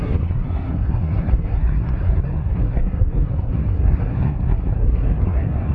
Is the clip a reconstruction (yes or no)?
yes